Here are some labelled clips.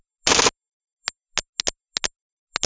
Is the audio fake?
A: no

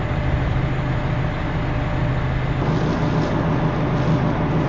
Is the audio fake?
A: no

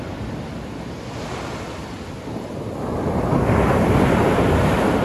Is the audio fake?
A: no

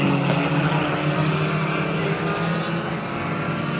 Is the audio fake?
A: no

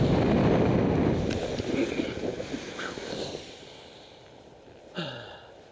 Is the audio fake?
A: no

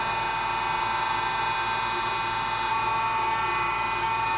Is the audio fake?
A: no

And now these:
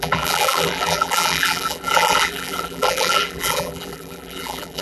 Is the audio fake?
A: yes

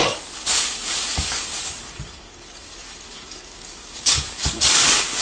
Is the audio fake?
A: yes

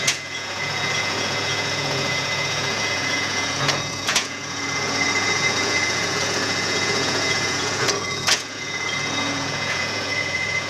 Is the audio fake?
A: yes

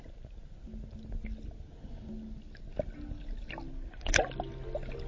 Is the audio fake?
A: no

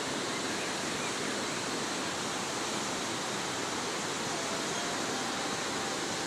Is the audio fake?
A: no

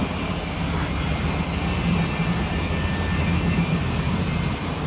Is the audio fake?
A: yes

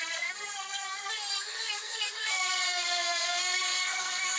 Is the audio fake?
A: yes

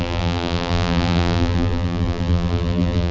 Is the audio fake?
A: yes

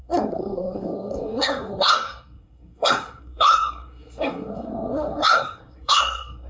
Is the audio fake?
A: yes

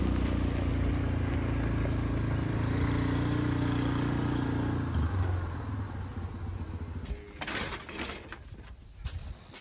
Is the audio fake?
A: no